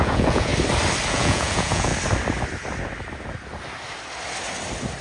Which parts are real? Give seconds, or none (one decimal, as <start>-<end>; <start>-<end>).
0.5-1.1; 1.9-5.0